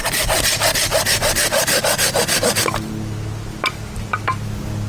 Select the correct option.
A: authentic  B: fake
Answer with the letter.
A